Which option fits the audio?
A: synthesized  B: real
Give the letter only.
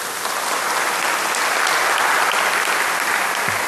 B